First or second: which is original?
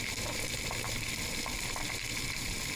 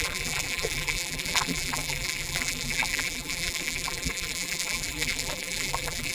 first